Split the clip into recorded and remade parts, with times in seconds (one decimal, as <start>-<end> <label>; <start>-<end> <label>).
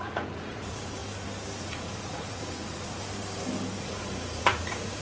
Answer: 0.0-1.0 remade; 1.0-1.6 recorded; 1.6-3.0 remade; 3.0-3.8 recorded; 3.8-5.0 remade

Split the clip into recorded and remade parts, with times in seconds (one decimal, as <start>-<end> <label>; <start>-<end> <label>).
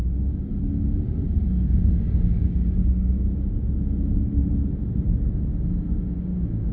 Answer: 0.0-6.7 recorded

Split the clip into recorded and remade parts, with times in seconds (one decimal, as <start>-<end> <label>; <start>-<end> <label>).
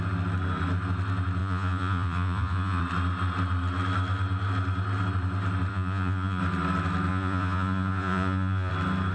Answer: 0.0-1.4 recorded; 1.4-2.8 remade; 2.8-5.7 recorded; 5.7-6.4 remade; 6.4-7.1 recorded; 7.1-8.7 remade; 8.7-9.1 recorded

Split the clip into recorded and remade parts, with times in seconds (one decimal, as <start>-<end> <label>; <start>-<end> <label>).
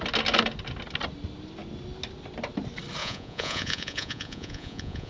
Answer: 0.0-3.0 recorded; 3.0-5.1 remade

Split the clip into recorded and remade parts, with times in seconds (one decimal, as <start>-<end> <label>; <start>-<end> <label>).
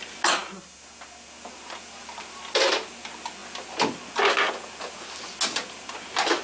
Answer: 0.0-6.4 recorded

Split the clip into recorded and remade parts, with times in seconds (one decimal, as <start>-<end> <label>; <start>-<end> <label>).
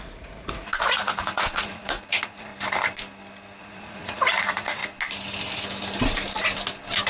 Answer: 0.0-2.5 remade; 2.5-3.6 recorded; 3.6-4.8 remade; 4.8-7.1 recorded